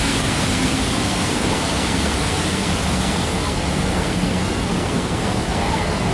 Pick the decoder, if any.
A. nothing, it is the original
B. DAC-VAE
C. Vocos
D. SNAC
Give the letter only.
D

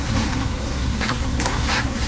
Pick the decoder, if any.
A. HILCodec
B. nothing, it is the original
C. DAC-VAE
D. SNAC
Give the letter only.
D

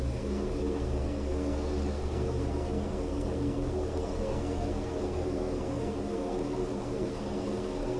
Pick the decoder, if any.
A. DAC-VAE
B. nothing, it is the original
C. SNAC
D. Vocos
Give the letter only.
C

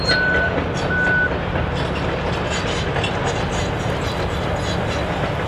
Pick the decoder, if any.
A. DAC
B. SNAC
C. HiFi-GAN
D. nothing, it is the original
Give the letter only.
D